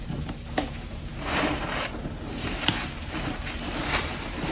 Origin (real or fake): fake